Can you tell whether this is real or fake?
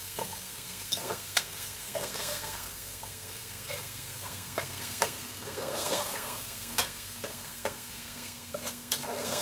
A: fake